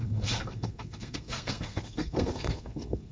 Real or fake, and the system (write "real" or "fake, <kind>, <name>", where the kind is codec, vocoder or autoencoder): fake, codec, SNAC